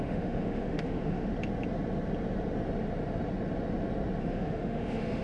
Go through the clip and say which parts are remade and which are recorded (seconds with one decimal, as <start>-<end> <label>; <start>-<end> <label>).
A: 0.0-1.3 remade; 1.3-4.2 recorded; 4.2-5.2 remade